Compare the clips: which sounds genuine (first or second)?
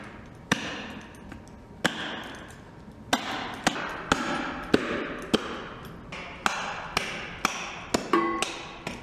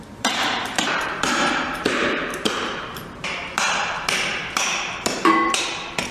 first